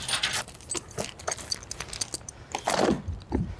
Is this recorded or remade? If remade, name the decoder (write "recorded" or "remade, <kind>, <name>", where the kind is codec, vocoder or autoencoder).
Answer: recorded